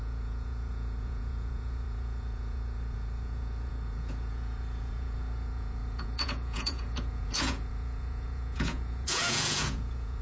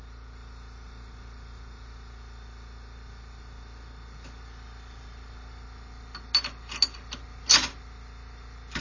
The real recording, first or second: second